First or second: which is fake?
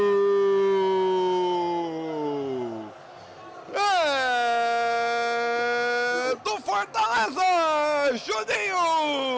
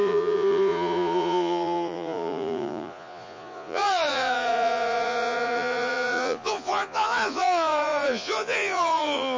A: second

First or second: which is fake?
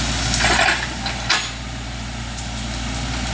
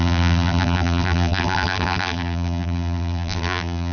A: second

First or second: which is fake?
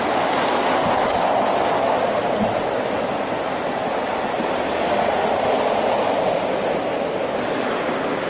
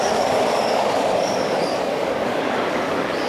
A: second